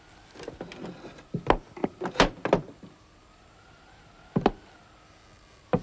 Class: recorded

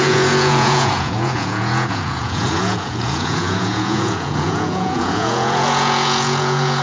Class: remade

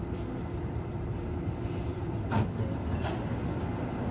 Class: recorded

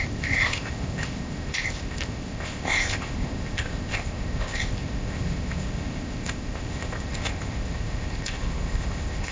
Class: remade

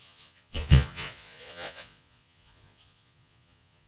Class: remade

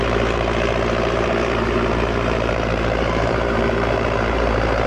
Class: remade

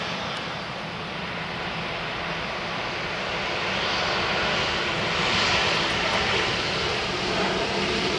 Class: recorded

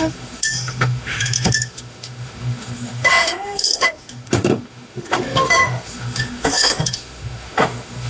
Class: remade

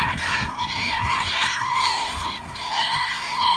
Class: remade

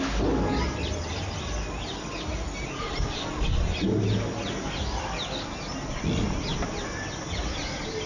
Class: recorded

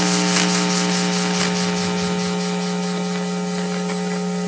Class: recorded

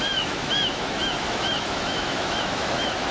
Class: remade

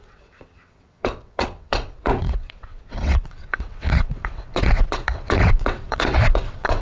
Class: remade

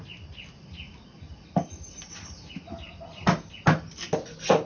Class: recorded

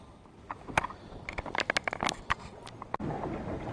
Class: recorded